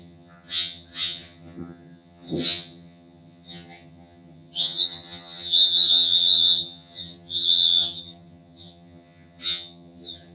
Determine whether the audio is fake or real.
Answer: fake